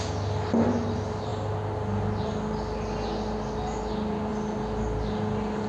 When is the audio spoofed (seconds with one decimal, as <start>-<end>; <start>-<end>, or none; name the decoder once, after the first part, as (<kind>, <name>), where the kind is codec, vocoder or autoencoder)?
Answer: none